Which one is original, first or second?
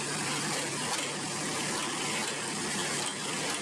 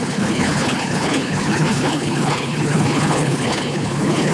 first